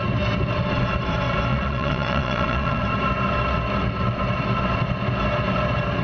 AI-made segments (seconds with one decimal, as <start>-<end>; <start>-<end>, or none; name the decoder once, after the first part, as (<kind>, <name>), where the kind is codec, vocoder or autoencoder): 1.5-2.8 (vocoder, Vocos)